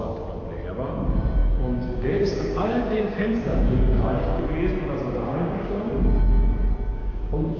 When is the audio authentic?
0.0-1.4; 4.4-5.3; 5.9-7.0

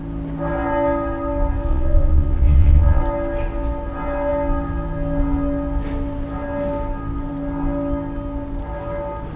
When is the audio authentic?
0.0-1.7; 3.0-9.4

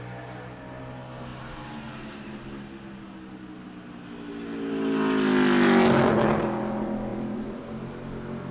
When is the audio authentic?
0.0-7.1; 7.9-8.5

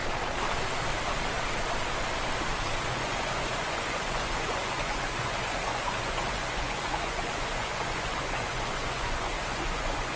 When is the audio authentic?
0.0-2.9

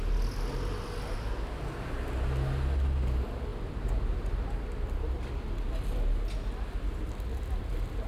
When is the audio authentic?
0.0-8.1

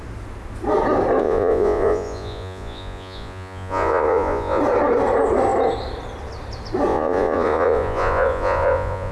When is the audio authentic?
0.0-1.2; 4.6-6.9

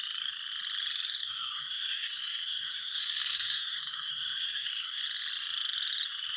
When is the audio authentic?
0.0-1.2; 5.0-6.4